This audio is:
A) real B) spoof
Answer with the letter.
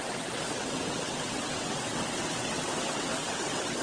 B